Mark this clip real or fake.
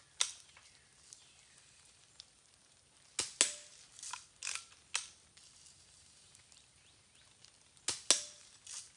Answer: real